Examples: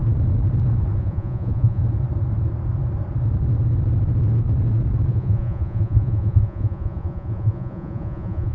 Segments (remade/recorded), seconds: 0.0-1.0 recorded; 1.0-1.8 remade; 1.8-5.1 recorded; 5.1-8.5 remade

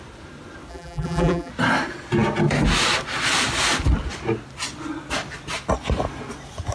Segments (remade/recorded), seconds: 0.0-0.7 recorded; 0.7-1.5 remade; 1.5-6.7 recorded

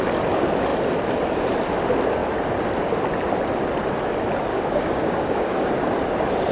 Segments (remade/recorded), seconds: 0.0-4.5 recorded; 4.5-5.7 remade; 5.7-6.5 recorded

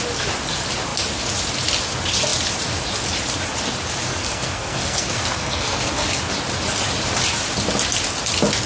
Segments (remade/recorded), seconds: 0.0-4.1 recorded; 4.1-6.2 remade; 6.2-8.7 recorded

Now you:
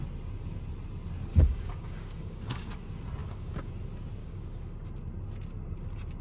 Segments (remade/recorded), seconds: 0.0-1.3 recorded; 1.3-2.7 remade; 2.7-3.2 recorded; 3.2-3.7 remade; 3.7-4.2 recorded; 4.2-4.9 remade; 4.9-6.2 recorded

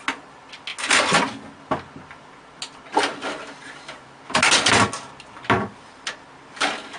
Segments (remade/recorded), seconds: 0.0-7.0 recorded

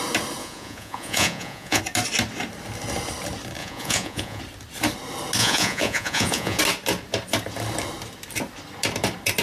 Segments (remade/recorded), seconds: 0.0-0.4 recorded; 0.4-1.8 remade; 1.8-3.6 recorded; 3.6-4.4 remade; 4.4-5.4 recorded; 5.4-6.6 remade; 6.6-9.4 recorded